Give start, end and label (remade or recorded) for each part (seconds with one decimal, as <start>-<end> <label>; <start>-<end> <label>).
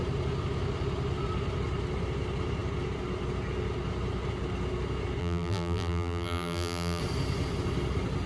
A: 0.0-5.2 recorded; 5.2-7.0 remade; 7.0-8.3 recorded